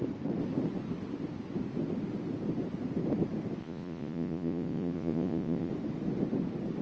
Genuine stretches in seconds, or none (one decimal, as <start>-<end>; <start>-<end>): 0.0-3.6; 5.7-6.8